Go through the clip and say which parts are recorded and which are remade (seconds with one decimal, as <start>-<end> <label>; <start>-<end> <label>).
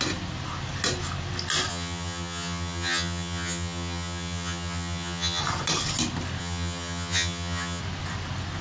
0.0-1.7 recorded; 1.7-5.4 remade; 5.4-6.4 recorded; 6.4-7.8 remade; 7.8-8.6 recorded